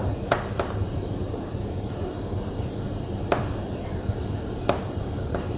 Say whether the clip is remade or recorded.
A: recorded